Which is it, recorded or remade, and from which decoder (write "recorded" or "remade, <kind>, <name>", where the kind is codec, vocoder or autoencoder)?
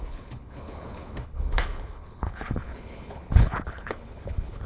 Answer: remade, codec, HILCodec